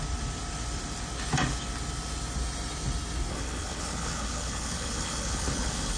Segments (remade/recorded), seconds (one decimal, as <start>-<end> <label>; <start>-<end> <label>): 0.0-3.3 recorded; 3.3-6.0 remade